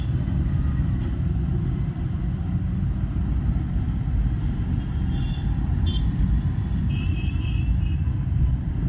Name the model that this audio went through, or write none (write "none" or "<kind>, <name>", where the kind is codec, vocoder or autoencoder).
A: none